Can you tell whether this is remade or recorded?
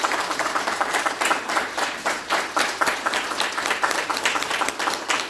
remade